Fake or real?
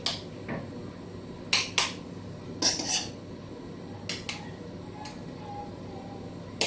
real